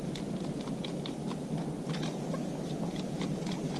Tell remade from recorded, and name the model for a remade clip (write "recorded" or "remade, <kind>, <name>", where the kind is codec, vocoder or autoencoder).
recorded